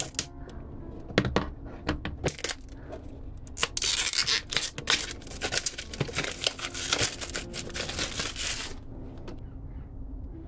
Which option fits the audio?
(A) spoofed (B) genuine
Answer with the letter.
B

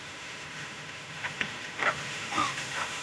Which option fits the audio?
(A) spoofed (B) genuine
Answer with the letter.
A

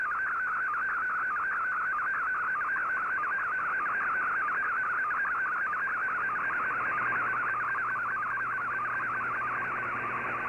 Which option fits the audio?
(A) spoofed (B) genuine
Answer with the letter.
B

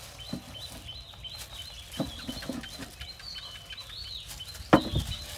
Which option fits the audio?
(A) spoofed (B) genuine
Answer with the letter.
B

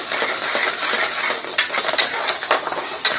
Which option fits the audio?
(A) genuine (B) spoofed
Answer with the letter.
A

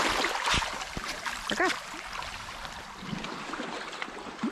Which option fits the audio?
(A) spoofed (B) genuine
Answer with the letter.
B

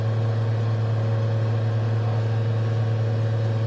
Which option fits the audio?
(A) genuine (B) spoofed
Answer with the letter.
A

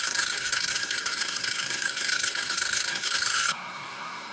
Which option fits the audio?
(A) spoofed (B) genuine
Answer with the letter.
A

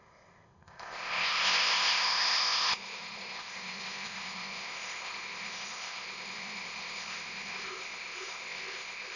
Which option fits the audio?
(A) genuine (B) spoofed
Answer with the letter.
B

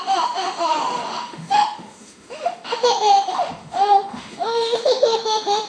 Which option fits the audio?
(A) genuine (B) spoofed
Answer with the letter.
B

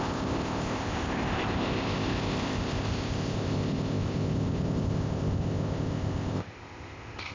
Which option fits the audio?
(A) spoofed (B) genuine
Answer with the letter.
A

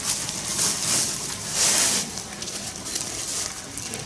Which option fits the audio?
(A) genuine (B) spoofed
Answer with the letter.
A